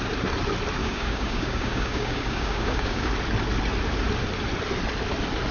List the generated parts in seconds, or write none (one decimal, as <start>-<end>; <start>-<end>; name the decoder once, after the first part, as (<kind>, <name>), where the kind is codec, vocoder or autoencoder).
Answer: 0.8-3.1 (codec, DAC)